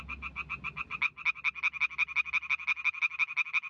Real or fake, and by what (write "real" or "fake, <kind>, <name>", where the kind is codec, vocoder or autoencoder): real